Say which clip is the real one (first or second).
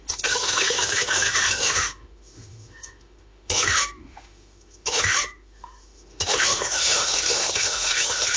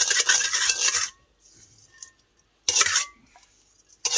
second